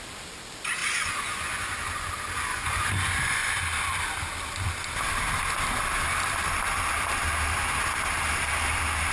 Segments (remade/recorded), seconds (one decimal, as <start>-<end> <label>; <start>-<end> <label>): 0.0-0.8 recorded; 0.8-2.1 remade; 2.1-2.5 recorded; 2.5-3.6 remade; 3.6-9.1 recorded